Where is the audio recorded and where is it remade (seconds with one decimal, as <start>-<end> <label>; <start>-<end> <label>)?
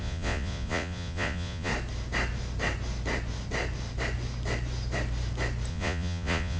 0.0-1.7 remade; 1.7-5.7 recorded; 5.7-6.6 remade